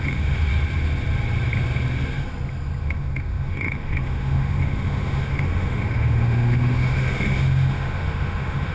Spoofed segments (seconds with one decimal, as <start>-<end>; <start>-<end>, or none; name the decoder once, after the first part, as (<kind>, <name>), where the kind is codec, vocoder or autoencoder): 0.0-0.5 (autoencoder, DAC-VAE); 2.8-8.7